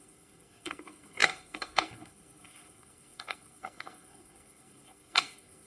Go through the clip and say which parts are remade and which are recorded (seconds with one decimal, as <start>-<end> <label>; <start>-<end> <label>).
0.0-5.7 remade